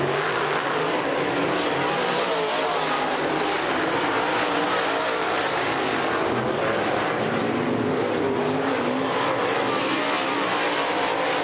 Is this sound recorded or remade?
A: recorded